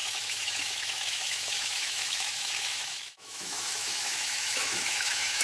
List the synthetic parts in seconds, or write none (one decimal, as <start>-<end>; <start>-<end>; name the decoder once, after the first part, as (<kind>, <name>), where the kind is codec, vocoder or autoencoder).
0.0-5.4 (autoencoder, DAC-VAE)